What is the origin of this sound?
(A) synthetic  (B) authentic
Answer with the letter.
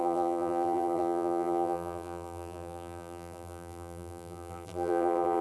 A